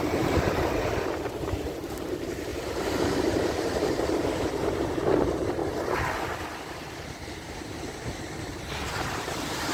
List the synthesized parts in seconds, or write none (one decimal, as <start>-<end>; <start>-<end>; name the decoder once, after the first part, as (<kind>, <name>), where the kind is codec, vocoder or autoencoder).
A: 0.0-5.6 (vocoder, BigVGAN v2); 7.2-9.7